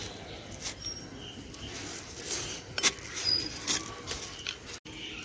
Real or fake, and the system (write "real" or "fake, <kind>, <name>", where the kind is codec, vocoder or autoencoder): real